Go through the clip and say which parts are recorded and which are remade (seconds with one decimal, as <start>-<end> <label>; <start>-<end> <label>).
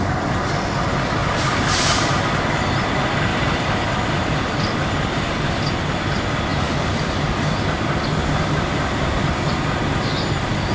0.0-1.2 recorded; 1.2-2.4 remade; 2.4-3.3 recorded; 3.3-4.9 remade; 4.9-10.7 recorded